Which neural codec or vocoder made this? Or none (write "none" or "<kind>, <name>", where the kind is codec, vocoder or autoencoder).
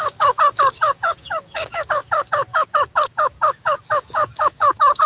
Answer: codec, DAC